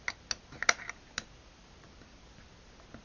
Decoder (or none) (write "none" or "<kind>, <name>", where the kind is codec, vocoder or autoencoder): none